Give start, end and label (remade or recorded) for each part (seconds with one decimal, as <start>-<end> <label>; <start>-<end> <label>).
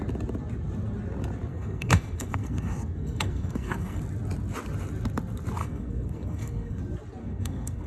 0.0-1.5 recorded; 1.5-4.0 remade; 4.0-5.6 recorded; 5.6-6.8 remade; 6.8-7.2 recorded; 7.2-7.9 remade